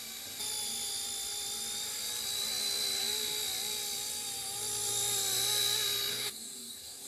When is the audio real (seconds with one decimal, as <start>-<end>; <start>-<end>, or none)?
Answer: 0.0-6.1